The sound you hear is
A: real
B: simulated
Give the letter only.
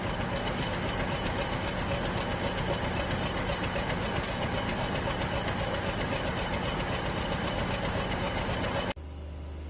A